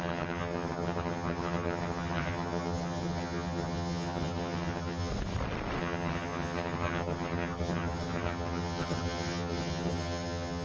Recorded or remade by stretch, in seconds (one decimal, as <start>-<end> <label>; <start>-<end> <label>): 0.0-5.1 remade; 5.1-5.8 recorded; 5.8-10.6 remade